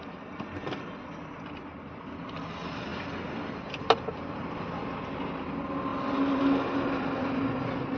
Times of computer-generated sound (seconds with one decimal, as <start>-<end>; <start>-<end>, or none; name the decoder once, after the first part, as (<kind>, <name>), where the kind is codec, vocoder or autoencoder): 5.9-6.4 (vocoder, BigVGAN v2)